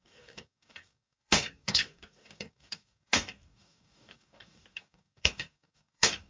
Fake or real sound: fake